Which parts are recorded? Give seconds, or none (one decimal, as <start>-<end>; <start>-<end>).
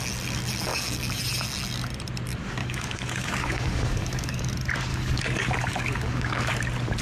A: 0.0-0.7; 1.2-2.6; 4.5-4.9; 6.5-7.0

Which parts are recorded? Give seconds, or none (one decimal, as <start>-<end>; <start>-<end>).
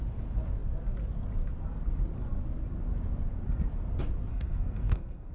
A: 0.0-4.3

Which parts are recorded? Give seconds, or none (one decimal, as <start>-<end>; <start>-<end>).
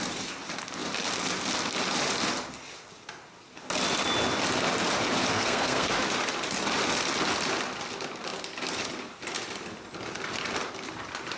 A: 0.0-5.3; 5.9-11.4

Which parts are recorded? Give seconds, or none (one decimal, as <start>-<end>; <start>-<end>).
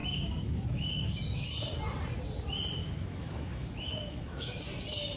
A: 1.1-2.8; 4.6-5.2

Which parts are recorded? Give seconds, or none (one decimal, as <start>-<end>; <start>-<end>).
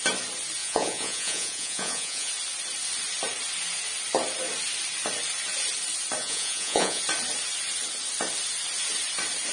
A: 0.0-0.6; 2.3-6.2; 7.0-9.5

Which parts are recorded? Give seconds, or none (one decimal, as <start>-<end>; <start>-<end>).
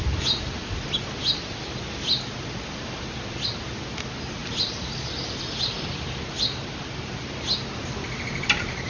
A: 0.0-4.4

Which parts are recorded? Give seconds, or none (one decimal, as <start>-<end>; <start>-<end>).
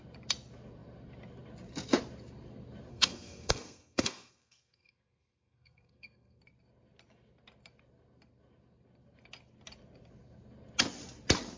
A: 0.0-2.9; 6.4-11.6